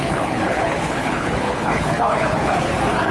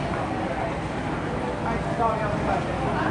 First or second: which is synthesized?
first